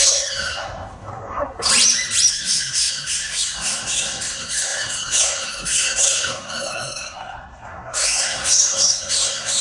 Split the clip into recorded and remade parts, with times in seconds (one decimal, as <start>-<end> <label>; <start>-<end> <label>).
0.0-1.7 remade; 1.7-2.3 recorded; 2.3-9.6 remade